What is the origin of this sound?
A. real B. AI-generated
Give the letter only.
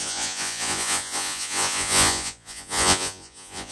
B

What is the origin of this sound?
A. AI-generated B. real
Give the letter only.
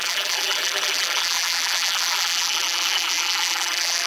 A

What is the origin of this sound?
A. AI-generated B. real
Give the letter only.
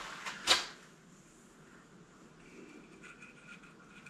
B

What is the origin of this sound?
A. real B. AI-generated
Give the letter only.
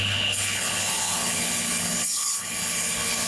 B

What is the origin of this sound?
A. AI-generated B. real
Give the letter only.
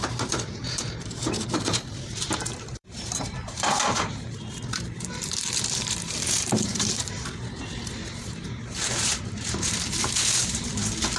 A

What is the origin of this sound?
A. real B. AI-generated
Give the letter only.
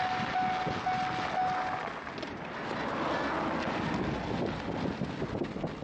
A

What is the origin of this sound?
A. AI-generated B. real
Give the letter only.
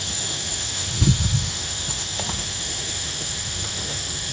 A